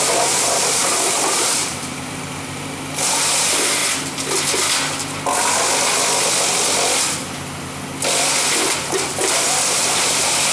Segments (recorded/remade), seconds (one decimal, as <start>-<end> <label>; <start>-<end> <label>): 0.0-3.8 remade; 3.8-8.6 recorded; 8.6-10.5 remade